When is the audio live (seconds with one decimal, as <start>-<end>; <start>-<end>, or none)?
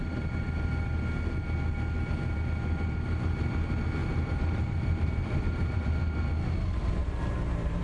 0.0-4.0; 5.9-7.0